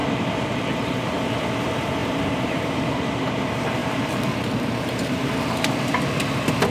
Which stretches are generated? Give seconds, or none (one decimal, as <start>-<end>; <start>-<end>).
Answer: 2.0-2.9; 3.8-5.9